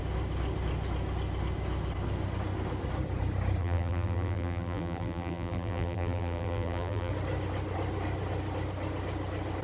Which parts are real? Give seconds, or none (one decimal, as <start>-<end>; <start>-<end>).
0.0-3.6; 7.1-9.6